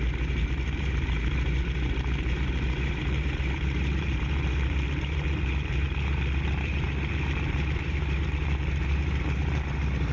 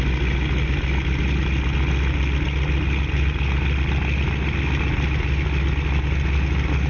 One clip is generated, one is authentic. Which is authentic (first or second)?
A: second